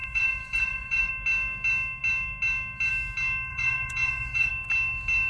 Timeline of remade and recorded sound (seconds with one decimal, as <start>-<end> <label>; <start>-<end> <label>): 0.0-1.1 remade; 1.1-3.5 recorded; 3.5-4.5 remade; 4.5-5.3 recorded